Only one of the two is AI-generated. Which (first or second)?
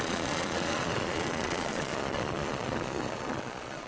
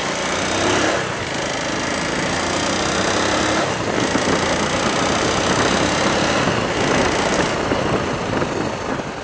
first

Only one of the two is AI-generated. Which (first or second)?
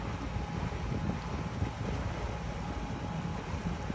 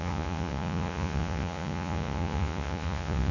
second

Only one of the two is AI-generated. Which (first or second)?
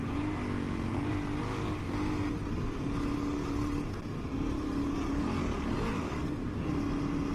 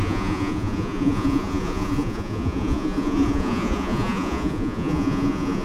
second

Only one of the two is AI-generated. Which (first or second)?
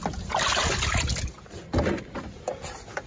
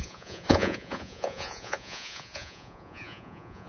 second